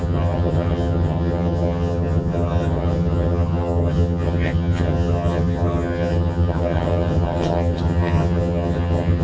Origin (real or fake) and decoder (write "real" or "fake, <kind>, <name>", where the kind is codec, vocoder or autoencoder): fake, vocoder, HiFi-GAN